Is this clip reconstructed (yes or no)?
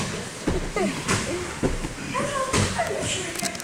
no